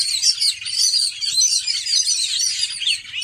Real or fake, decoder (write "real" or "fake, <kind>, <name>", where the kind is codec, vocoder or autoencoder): fake, vocoder, BigVGAN v2